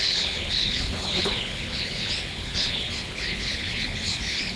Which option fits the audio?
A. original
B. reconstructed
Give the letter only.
B